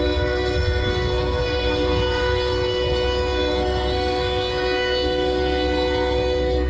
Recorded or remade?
remade